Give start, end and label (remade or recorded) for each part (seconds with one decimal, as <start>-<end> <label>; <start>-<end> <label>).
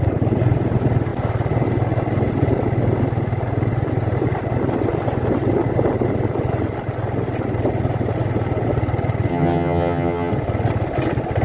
0.0-9.3 recorded; 9.3-10.3 remade; 10.3-11.4 recorded